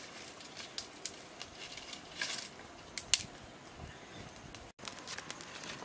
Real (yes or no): yes